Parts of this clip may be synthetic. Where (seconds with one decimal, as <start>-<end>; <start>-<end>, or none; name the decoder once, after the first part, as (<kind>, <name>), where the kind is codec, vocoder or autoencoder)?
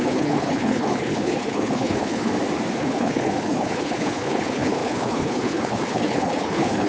0.0-2.3 (codec, HILCodec); 2.8-6.9